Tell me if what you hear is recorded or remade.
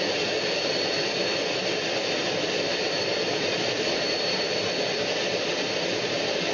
remade